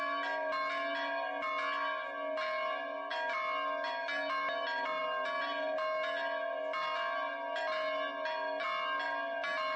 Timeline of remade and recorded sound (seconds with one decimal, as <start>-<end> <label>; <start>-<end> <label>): 0.0-9.8 recorded

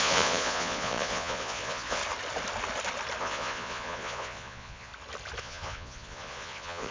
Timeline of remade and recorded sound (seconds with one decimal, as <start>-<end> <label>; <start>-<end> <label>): 0.0-2.0 remade; 2.0-3.2 recorded; 3.2-4.9 remade; 4.9-5.4 recorded; 5.4-6.9 remade

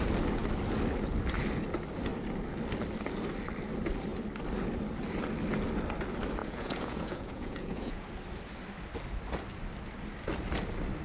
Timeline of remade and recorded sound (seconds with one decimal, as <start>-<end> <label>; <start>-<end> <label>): 0.0-6.4 recorded; 6.4-8.1 remade; 8.1-11.0 recorded

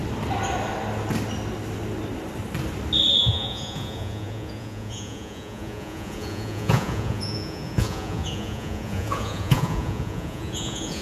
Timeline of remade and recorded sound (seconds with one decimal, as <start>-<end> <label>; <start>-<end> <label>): 0.0-3.2 recorded; 3.2-11.0 remade

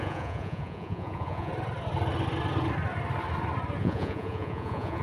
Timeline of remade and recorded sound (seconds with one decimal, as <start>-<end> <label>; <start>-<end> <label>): 0.0-1.5 remade; 1.5-3.8 recorded; 3.8-5.0 remade

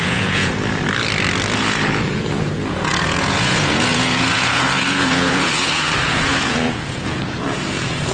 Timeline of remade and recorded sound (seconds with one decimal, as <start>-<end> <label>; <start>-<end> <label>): 0.0-0.5 remade; 0.5-1.6 recorded; 1.6-8.1 remade

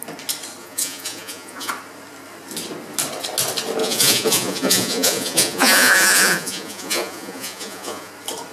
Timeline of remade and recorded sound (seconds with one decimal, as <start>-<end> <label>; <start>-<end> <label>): 0.0-0.6 recorded; 0.6-1.7 remade; 1.7-3.8 recorded; 3.8-8.1 remade; 8.1-8.5 recorded